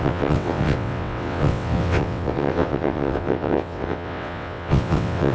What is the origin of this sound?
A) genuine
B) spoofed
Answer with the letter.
B